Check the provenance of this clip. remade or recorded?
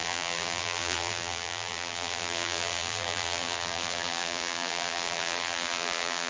remade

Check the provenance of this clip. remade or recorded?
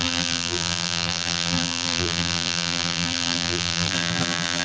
remade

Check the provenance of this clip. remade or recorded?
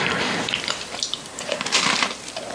remade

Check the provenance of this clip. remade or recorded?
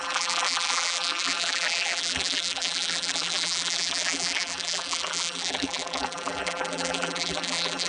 remade